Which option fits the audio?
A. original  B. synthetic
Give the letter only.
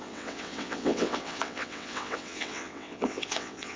B